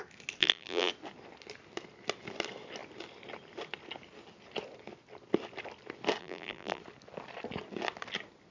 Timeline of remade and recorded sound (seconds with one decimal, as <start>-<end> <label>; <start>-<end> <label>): 0.0-0.4 recorded; 0.4-0.9 remade; 0.9-6.2 recorded; 6.2-6.8 remade; 6.8-8.5 recorded